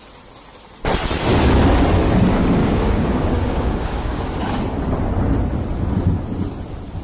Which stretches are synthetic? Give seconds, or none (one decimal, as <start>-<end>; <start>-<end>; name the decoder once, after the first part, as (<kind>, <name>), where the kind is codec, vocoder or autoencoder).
2.6-4.2 (codec, DAC)